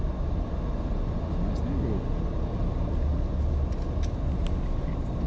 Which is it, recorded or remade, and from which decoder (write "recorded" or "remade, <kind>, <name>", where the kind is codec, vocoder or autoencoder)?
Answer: recorded